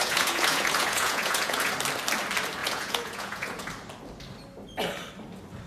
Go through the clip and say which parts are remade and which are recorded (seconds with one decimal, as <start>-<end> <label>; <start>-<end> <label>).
0.0-1.7 remade; 1.7-2.6 recorded; 2.6-3.7 remade; 3.7-5.7 recorded